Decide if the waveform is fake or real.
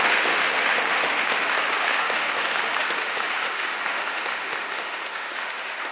fake